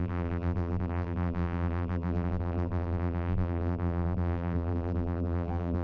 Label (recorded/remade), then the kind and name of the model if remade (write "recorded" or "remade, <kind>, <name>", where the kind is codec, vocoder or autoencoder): remade, vocoder, BigVGAN v2